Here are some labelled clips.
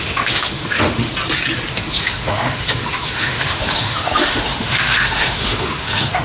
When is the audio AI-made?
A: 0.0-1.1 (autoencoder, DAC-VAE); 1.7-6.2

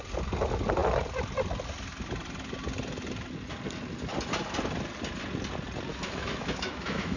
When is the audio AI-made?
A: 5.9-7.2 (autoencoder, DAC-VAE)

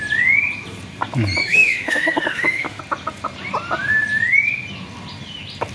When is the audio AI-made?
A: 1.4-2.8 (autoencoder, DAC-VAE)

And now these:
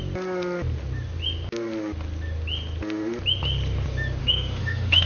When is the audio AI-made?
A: 4.2-5.1 (autoencoder, DAC-VAE)

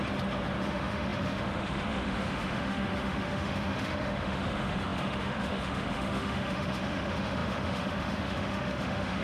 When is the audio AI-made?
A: 0.6-9.2 (autoencoder, DAC-VAE)